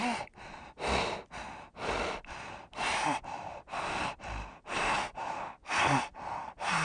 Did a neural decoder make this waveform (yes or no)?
no